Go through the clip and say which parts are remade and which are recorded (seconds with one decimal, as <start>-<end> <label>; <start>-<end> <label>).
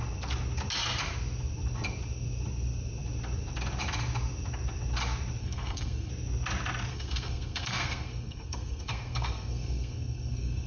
0.0-5.4 recorded; 5.4-6.1 remade; 6.1-6.9 recorded; 6.9-10.7 remade